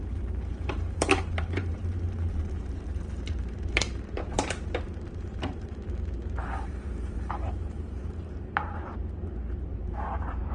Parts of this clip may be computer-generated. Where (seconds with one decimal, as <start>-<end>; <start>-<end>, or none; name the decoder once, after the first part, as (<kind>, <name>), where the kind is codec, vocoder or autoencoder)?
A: 0.0-1.8 (vocoder, BigVGAN v2); 2.6-5.8; 6.6-10.5